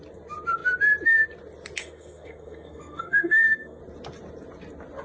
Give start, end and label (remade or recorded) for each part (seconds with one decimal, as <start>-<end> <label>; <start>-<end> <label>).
0.0-1.8 recorded; 1.8-3.8 remade; 3.8-5.0 recorded